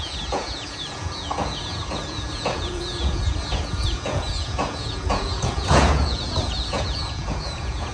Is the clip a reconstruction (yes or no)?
yes